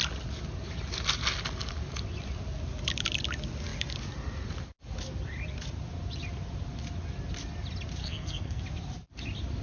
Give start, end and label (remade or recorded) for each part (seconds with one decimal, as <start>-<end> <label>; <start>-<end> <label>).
0.0-8.0 recorded; 8.0-8.6 remade; 8.6-9.6 recorded